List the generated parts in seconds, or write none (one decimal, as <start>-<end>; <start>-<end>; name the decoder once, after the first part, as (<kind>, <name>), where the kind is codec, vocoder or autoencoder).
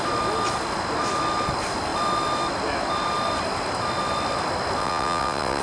4.8-5.6 (vocoder, WaveNeXt)